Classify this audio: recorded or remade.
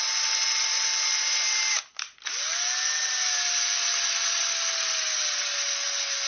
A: recorded